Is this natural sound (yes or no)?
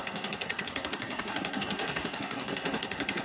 no